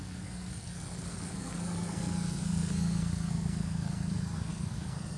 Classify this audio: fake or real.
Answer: fake